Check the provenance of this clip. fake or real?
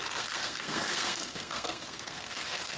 fake